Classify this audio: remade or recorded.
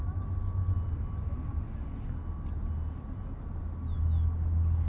recorded